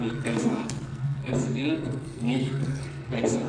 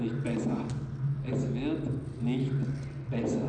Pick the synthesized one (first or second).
first